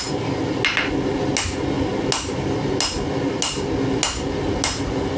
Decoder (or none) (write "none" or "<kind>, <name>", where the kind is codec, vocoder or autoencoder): none